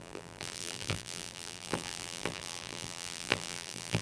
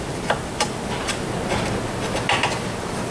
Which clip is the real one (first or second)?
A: second